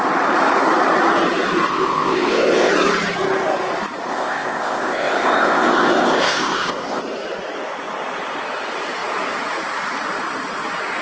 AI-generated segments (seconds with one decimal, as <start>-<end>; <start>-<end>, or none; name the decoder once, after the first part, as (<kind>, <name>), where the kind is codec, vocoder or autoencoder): 1.7-2.7 (codec, ZipCodec); 4.1-7.0